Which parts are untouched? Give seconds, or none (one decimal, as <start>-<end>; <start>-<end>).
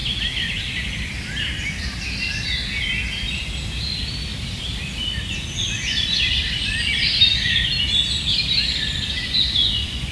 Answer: 0.0-9.2